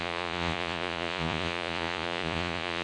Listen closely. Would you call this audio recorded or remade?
remade